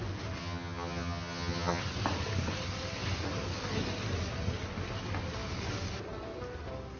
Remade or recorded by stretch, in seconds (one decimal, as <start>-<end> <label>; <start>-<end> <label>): 0.0-0.4 recorded; 0.4-1.8 remade; 1.8-7.0 recorded